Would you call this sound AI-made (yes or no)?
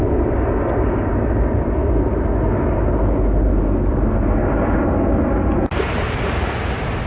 no